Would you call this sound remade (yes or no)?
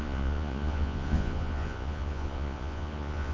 yes